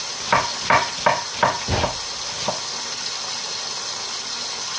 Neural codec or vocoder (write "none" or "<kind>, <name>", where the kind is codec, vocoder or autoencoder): none